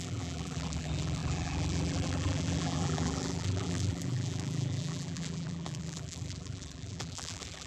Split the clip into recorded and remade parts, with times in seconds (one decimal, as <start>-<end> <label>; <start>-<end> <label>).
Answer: 0.0-7.7 remade